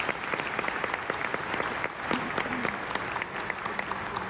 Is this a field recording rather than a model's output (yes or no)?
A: yes